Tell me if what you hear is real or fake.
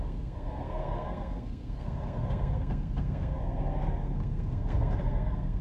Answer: fake